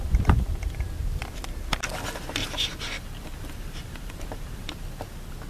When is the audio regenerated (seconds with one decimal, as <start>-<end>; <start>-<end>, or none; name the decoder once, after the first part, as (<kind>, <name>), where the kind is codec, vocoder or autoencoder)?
2.4-4.7 (vocoder, BigVGAN v2)